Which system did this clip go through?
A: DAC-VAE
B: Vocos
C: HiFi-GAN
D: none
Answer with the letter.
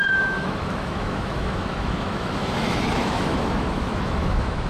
A